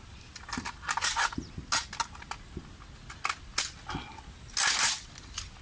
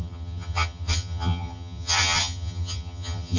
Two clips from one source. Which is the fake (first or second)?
second